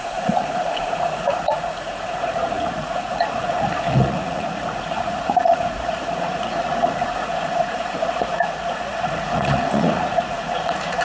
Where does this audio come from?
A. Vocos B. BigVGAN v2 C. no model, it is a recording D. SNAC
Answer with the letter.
A